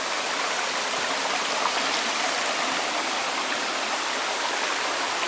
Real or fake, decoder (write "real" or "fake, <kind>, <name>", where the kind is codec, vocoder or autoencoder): real